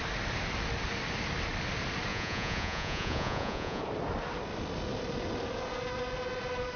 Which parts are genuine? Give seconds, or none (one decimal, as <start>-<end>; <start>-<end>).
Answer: 0.0-2.1; 3.8-6.8